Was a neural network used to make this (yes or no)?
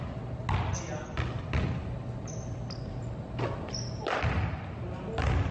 no